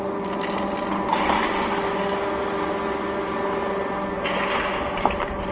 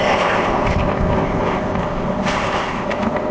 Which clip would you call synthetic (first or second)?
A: second